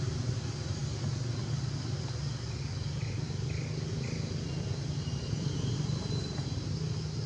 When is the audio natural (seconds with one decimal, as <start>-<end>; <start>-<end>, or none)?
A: 0.0-7.3